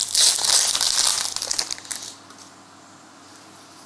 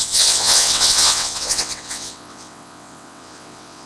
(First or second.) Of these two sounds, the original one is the first